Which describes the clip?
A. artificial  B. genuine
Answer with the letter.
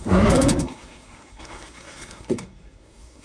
A